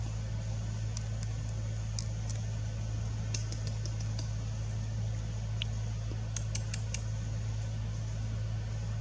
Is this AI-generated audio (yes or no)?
no